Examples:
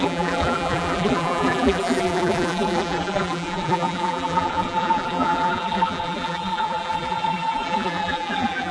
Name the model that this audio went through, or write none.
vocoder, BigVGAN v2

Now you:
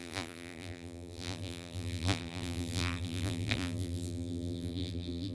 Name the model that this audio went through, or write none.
vocoder, BigVGAN v2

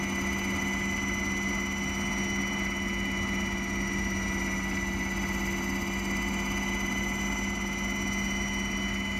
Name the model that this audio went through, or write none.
none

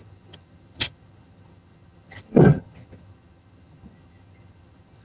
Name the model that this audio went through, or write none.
vocoder, HiFi-GAN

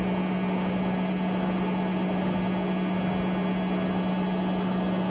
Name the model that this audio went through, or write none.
none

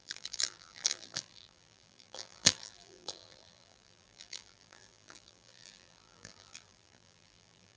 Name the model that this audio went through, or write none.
vocoder, BigVGAN v2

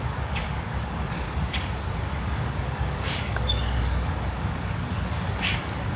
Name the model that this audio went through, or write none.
codec, DAC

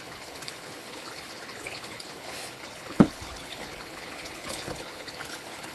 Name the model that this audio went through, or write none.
codec, HILCodec